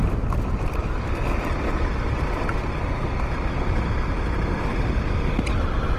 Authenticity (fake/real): real